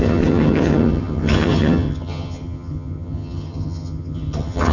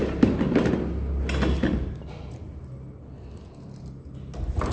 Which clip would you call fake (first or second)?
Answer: first